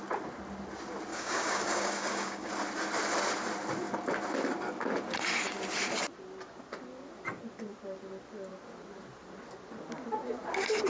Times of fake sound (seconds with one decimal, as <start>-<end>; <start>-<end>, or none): 1.1-2.5